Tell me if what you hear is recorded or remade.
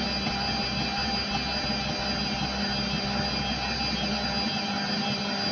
recorded